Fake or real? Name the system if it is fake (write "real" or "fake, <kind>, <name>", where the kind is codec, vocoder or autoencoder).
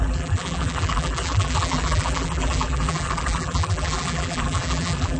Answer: fake, vocoder, BigVGAN v2